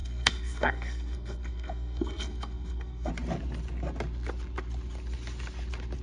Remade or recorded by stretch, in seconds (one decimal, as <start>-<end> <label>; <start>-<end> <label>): 0.0-3.1 remade; 3.1-6.0 recorded